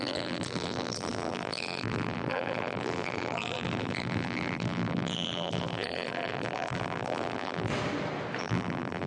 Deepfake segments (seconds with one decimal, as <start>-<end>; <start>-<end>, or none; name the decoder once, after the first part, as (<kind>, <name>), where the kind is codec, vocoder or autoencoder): 0.0-7.7 (vocoder, BigVGAN v2); 8.4-9.1